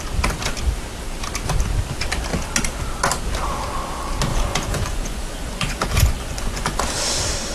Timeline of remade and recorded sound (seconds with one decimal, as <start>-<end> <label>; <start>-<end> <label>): 0.0-4.3 recorded; 4.3-6.8 remade; 6.8-7.5 recorded